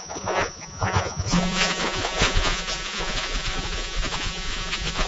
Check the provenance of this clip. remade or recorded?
remade